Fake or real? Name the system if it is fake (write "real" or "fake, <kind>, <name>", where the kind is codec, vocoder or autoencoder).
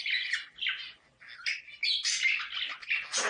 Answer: real